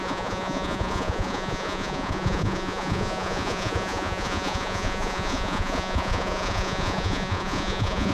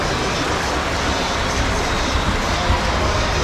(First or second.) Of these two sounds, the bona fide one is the second